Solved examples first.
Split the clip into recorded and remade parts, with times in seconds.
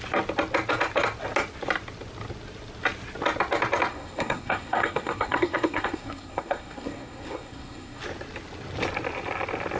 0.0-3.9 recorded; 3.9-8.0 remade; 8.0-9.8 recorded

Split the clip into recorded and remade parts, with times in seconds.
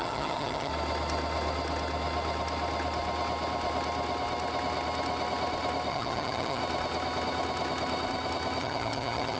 0.0-0.7 remade; 0.7-5.9 recorded; 5.9-6.6 remade; 6.6-8.6 recorded; 8.6-9.4 remade